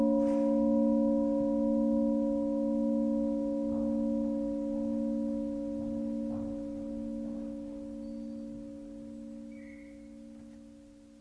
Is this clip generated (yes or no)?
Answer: no